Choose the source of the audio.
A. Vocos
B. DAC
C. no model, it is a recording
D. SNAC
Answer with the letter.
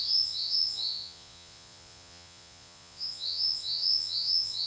A